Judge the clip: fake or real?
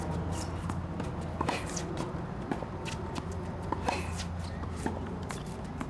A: real